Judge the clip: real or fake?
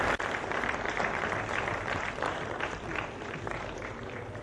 fake